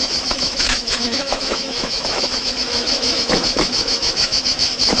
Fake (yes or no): yes